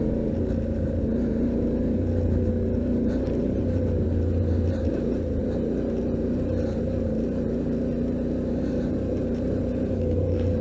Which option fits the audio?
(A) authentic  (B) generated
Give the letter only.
A